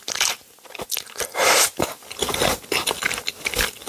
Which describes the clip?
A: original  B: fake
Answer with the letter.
A